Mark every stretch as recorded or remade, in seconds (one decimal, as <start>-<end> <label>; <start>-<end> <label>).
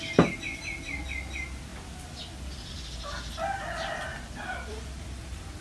0.0-4.1 recorded; 4.1-5.6 remade